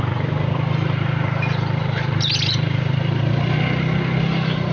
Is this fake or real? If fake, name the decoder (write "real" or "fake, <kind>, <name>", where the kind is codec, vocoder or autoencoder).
real